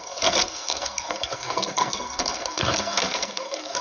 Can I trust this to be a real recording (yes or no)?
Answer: no